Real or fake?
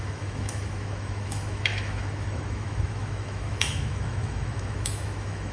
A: fake